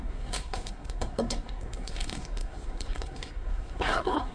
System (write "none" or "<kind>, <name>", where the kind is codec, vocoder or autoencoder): codec, SNAC